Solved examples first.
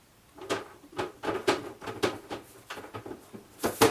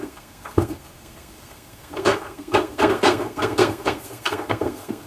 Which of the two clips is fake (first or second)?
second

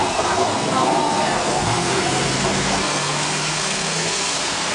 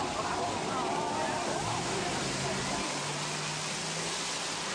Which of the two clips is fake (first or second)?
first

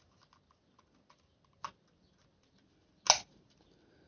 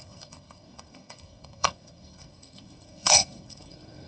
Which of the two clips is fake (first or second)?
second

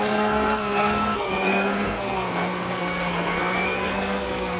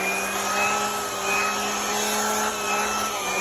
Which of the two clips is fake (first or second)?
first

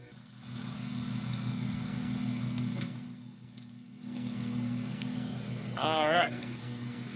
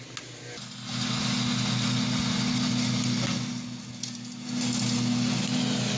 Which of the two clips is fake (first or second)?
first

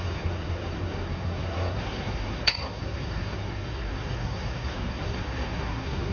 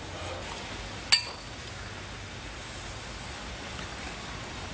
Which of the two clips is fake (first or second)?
first